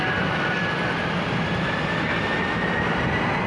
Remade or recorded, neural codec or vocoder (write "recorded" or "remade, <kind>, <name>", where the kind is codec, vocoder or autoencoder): recorded